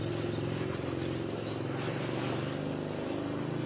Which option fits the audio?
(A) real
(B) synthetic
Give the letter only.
A